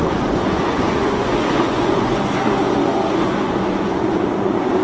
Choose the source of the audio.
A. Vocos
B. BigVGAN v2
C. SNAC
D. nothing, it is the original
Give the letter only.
A